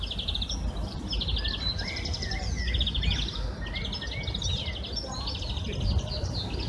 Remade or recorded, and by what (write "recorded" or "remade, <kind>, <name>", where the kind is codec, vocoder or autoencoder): recorded